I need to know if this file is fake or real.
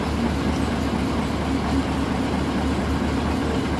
real